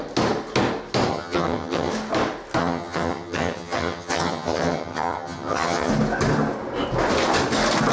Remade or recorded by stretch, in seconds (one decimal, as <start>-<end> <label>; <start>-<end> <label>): 0.0-1.1 recorded; 1.1-1.9 remade; 1.9-2.6 recorded; 2.6-5.9 remade; 5.9-7.9 recorded